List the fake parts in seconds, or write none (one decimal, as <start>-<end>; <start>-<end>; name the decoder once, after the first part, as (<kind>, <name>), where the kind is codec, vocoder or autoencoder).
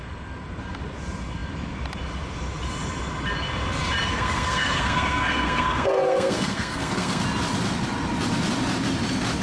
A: 4.1-7.2 (codec, SNAC)